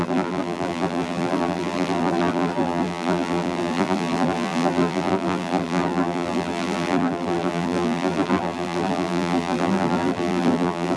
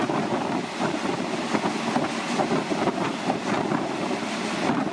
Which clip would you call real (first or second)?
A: second